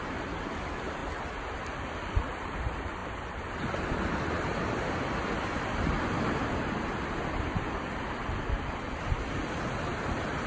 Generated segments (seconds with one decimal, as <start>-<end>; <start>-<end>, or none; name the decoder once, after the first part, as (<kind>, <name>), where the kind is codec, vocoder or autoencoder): 0.0-1.0 (vocoder, BigVGAN v2); 1.6-8.2; 9.1-10.5

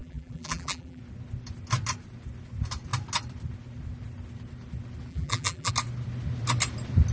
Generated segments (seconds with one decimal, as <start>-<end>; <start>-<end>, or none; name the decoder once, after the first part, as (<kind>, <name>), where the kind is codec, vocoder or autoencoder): 0.0-1.0 (vocoder, BigVGAN v2); 5.1-5.7

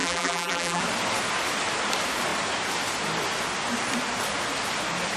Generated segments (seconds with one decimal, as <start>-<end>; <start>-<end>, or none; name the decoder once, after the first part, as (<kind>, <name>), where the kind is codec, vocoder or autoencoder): 0.0-0.8 (vocoder, BigVGAN v2)

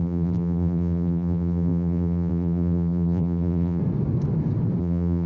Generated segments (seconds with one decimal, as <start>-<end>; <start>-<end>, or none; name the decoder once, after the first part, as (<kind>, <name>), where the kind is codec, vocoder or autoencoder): 0.0-3.8 (vocoder, BigVGAN v2); 4.8-5.3

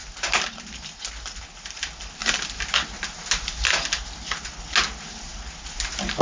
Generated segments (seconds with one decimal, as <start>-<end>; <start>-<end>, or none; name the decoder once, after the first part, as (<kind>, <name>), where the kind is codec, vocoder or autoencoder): none

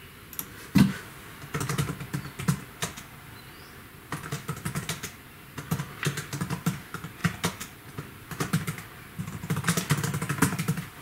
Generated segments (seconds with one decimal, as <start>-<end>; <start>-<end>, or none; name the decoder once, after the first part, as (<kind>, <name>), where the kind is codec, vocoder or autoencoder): none